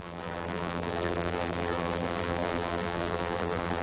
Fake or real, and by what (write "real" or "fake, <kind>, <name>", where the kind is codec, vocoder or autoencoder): fake, vocoder, BigVGAN v2